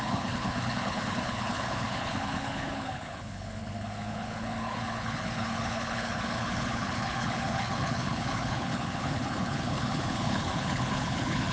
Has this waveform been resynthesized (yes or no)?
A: yes